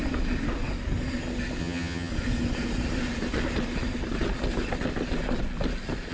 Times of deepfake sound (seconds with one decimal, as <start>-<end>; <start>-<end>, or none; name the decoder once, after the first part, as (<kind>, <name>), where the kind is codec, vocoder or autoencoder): 1.6-2.1 (vocoder, HiFi-GAN)